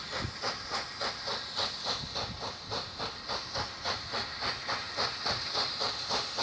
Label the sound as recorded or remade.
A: recorded